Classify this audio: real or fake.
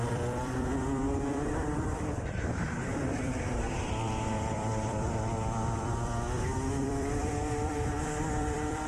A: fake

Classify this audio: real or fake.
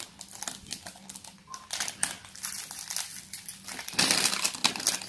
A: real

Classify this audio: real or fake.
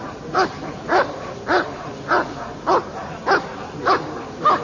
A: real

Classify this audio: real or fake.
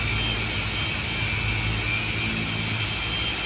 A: real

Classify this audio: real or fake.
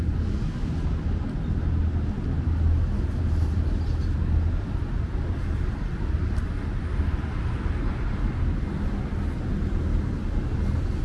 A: real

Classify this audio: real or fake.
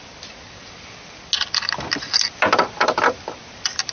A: real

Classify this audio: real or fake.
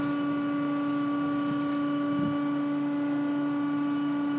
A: real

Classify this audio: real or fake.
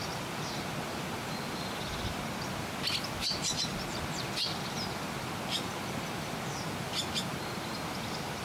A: real